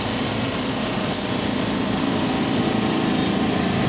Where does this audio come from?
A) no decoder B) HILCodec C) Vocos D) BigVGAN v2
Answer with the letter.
D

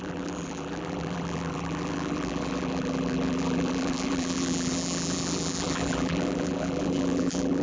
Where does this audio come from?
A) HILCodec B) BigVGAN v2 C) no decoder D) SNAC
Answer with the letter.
B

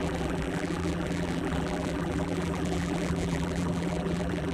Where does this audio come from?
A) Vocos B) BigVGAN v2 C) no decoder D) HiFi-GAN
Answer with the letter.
B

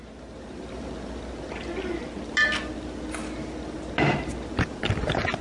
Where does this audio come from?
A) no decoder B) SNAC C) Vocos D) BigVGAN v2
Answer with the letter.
A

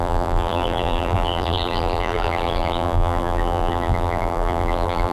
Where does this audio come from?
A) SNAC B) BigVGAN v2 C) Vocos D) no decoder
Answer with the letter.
B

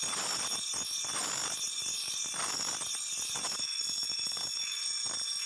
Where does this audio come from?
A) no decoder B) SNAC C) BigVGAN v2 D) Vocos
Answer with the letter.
A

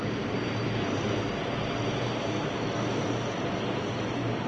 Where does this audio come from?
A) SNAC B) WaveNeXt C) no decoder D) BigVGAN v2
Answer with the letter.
D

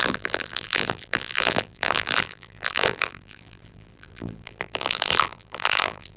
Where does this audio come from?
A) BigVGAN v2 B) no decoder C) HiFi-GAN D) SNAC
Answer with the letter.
A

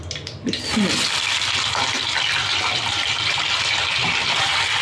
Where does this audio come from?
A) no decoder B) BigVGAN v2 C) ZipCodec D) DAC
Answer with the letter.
B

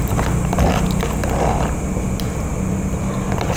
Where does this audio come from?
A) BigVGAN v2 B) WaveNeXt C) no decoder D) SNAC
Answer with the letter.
C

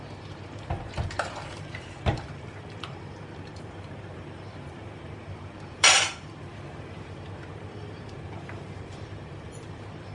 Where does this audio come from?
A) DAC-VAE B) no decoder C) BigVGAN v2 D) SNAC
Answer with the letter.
C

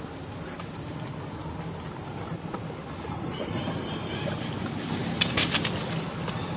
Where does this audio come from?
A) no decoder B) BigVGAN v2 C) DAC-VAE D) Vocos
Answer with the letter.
A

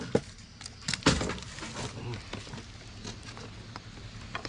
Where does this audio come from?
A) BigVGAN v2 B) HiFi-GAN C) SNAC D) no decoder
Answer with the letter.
D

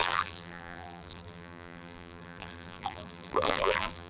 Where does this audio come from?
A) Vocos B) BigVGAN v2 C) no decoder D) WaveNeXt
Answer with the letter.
B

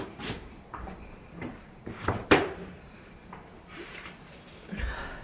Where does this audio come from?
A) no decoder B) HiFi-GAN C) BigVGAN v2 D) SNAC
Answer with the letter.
C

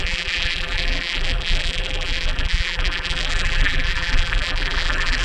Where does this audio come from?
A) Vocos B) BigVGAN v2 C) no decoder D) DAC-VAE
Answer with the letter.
B